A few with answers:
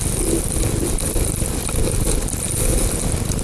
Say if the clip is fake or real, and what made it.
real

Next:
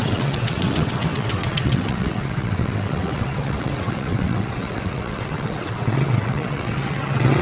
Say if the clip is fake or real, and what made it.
fake, vocoder, WaveNeXt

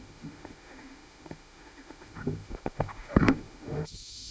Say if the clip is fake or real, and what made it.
fake, autoencoder, DAC-VAE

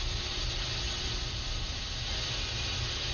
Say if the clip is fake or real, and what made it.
real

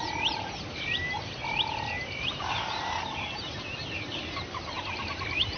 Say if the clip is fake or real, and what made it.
real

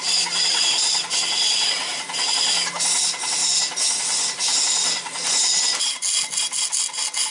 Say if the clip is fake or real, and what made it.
real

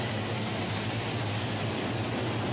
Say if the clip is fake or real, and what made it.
real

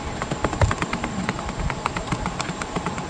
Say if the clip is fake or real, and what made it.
real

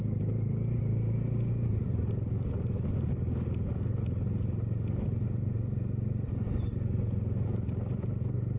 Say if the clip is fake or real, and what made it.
real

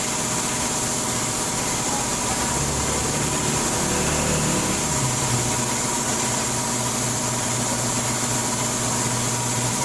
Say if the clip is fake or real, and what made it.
real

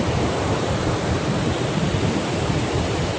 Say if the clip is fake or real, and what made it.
fake, vocoder, BigVGAN v2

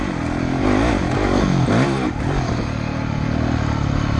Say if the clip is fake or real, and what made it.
real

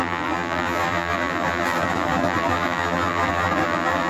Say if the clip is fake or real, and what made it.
fake, vocoder, BigVGAN v2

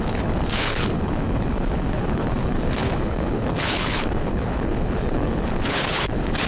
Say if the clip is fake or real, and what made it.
fake, codec, HILCodec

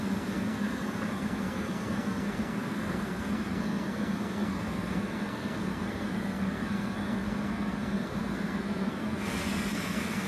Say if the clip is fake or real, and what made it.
fake, codec, SNAC